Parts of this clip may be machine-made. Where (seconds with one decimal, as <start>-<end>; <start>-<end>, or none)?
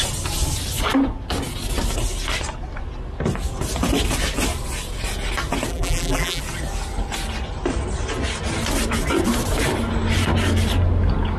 5.7-6.4